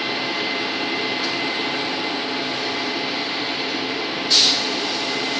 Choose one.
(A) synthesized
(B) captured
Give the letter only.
B